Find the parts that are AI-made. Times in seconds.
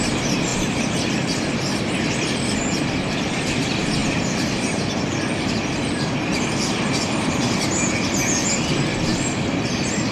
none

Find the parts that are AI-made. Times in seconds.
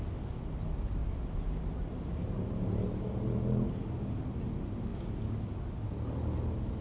1.0-2.7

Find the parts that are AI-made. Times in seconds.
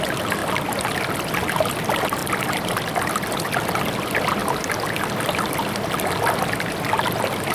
0.4-1.8; 2.2-3.4; 4.4-5.1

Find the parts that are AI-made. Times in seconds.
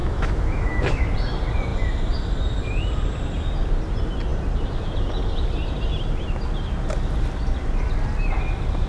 0.0-1.0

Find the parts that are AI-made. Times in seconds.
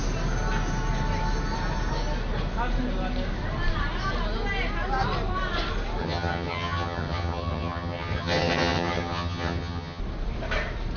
6.0-10.0